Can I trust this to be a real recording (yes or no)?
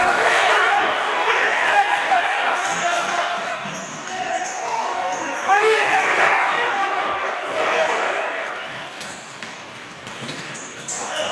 no